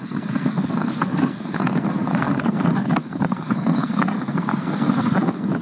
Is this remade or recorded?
remade